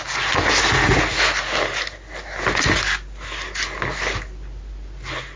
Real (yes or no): yes